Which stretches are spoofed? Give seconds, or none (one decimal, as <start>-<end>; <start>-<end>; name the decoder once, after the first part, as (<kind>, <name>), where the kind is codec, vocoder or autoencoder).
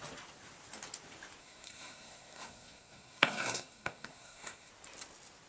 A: 1.4-4.7 (codec, SNAC)